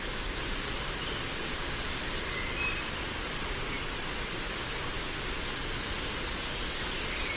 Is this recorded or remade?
recorded